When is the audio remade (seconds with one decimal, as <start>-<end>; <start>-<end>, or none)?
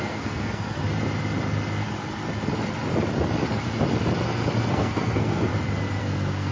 0.0-0.8; 4.7-5.5; 6.0-6.5